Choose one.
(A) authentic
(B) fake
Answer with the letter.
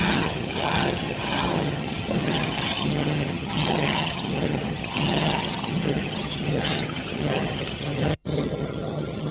B